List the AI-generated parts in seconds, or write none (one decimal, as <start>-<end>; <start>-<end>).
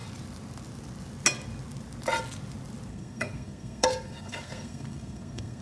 2.9-5.6